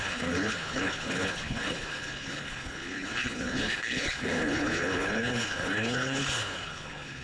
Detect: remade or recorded remade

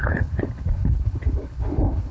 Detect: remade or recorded remade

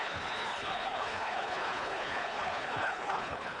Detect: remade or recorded remade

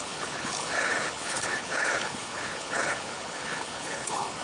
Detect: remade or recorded remade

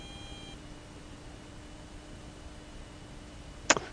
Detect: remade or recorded recorded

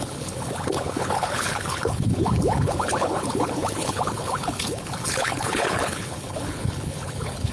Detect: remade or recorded remade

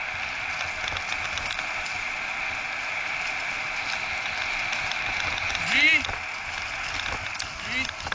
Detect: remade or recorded recorded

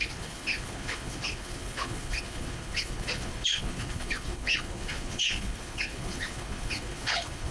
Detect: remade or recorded remade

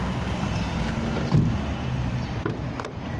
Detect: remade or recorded recorded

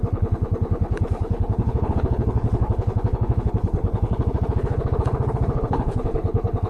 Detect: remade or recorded remade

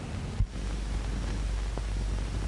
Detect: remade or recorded recorded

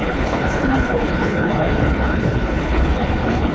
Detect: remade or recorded remade